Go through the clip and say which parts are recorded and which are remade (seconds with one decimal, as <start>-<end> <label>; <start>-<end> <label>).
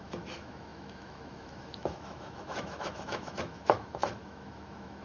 0.0-5.0 remade